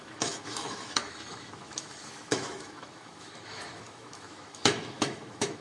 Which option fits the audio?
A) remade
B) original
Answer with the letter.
A